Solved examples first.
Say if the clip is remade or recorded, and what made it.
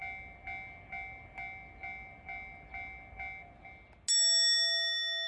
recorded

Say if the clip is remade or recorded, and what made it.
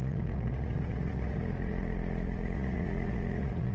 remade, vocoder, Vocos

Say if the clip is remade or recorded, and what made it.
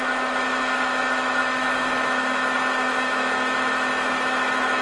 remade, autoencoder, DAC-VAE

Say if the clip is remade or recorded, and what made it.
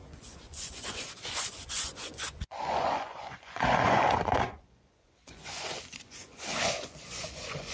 remade, vocoder, Vocos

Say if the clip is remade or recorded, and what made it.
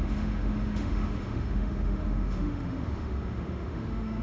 remade, autoencoder, DAC-VAE